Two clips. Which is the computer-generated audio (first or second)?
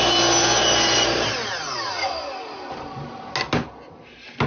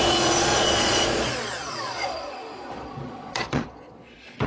second